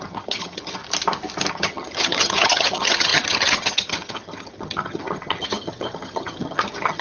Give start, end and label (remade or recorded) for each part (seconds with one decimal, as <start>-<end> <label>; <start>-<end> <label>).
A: 0.0-0.8 remade; 0.8-1.5 recorded; 1.5-7.0 remade